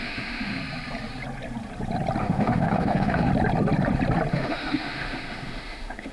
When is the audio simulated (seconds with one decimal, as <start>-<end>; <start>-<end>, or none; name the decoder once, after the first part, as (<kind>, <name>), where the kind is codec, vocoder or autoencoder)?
0.0-0.6 (autoencoder, DAC-VAE); 2.2-3.3; 4.3-6.1

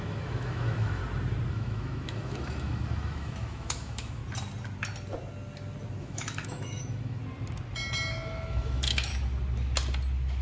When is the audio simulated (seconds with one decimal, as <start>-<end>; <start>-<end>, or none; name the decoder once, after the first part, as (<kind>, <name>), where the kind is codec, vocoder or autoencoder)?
0.0-1.0 (autoencoder, DAC-VAE); 1.5-4.2; 6.0-7.2; 8.1-9.1